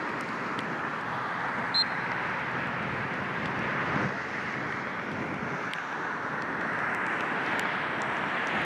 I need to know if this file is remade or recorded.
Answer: recorded